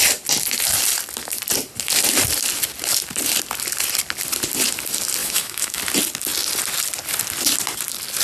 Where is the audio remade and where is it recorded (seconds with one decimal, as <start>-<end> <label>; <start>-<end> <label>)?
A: 0.0-5.2 recorded; 5.2-5.8 remade; 5.8-8.2 recorded